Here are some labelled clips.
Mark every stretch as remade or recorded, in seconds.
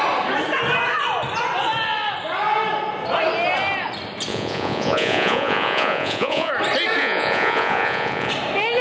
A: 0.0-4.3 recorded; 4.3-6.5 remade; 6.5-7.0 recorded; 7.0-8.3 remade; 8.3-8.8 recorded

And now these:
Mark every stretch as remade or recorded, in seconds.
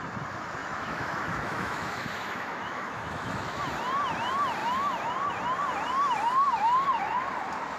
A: 0.0-0.6 recorded; 0.6-3.6 remade; 3.6-7.8 recorded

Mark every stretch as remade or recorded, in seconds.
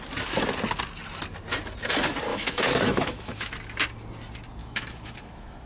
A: 0.0-2.3 recorded; 2.3-3.5 remade; 3.5-4.6 recorded; 4.6-5.7 remade